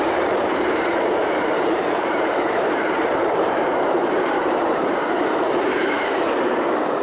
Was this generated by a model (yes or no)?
yes